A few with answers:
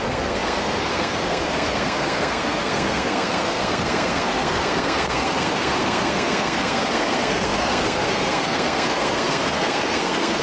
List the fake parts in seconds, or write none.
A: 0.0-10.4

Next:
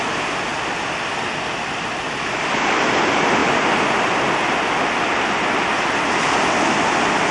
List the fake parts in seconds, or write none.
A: none

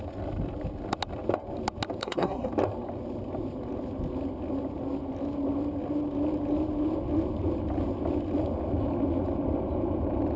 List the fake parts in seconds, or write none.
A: 2.0-2.5